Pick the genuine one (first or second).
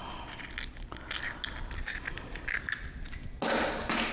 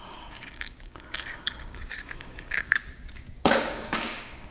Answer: first